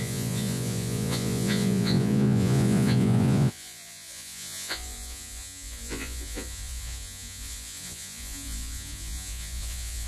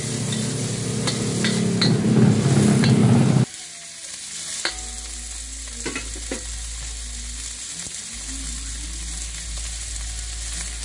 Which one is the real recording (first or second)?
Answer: second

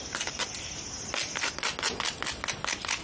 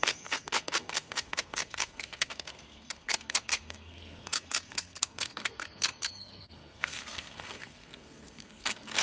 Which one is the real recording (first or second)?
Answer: first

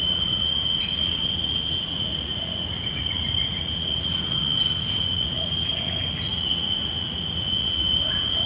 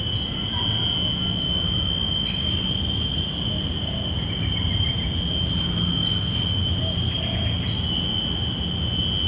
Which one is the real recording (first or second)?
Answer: second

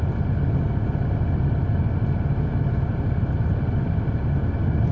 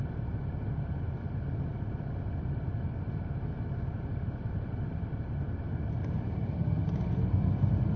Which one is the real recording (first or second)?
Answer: first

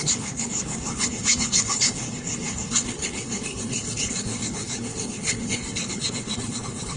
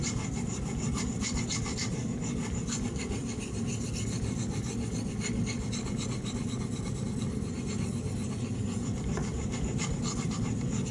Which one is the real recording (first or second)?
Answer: second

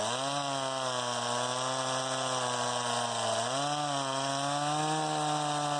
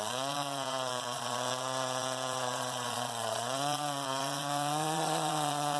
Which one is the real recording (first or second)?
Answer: first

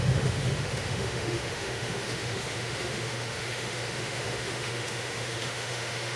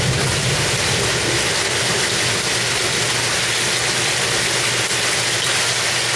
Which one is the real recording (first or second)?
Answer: second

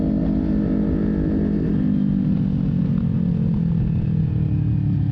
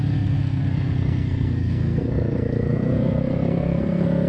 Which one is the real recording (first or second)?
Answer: first